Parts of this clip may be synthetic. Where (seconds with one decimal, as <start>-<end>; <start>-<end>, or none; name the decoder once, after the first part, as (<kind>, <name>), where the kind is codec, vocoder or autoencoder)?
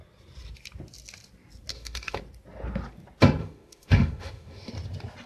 1.7-2.2 (autoencoder, DAC-VAE); 3.4-4.7